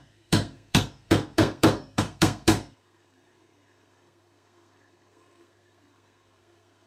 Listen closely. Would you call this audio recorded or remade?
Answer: remade